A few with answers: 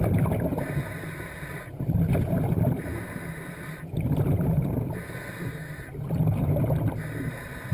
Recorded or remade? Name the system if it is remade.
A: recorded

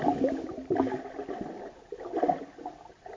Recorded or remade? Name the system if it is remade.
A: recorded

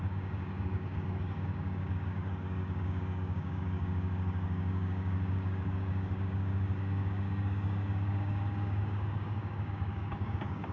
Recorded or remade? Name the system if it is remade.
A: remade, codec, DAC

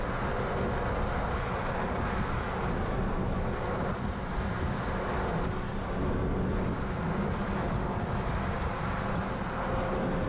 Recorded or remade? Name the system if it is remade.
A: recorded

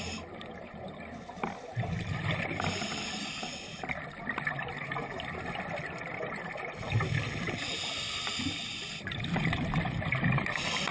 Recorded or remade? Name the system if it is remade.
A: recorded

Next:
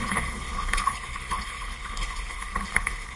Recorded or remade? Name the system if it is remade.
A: remade, codec, HILCodec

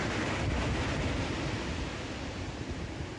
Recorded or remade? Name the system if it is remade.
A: recorded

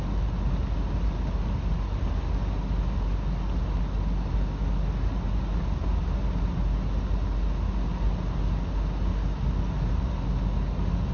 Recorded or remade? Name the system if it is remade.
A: recorded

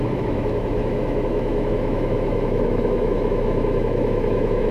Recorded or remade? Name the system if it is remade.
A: remade, autoencoder, DAC-VAE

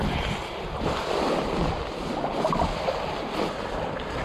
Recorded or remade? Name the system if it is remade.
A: recorded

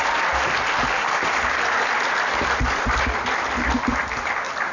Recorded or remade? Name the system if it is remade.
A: remade, vocoder, BigVGAN v2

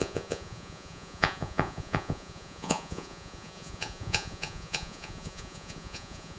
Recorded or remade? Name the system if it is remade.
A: remade, vocoder, Vocos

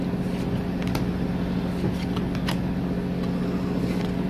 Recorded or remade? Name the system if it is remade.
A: recorded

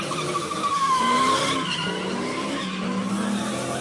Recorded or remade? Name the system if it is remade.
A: recorded